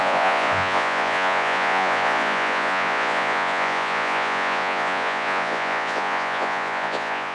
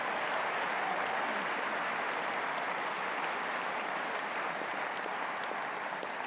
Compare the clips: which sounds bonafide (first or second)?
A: second